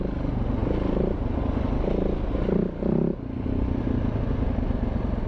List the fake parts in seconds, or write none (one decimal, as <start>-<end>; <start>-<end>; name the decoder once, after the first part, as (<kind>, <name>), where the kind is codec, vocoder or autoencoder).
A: none